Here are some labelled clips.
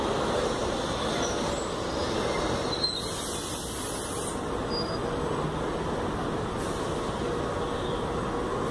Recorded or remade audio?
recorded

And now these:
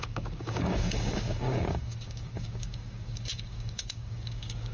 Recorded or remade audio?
remade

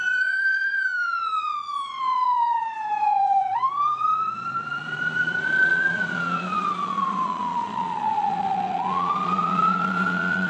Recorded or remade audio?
remade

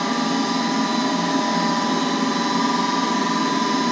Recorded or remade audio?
recorded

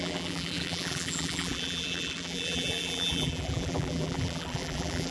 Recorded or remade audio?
remade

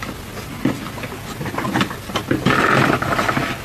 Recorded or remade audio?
recorded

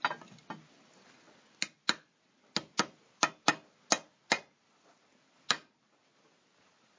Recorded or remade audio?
recorded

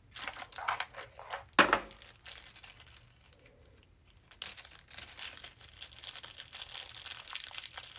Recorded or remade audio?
recorded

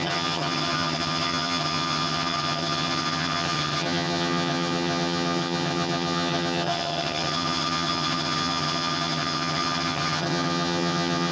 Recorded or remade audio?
remade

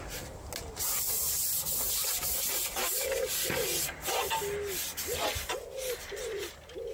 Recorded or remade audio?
recorded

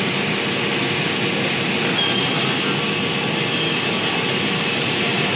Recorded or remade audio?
recorded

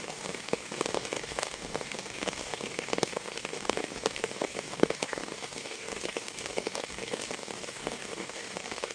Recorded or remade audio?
remade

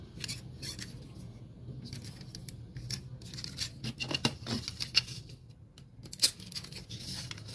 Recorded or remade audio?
recorded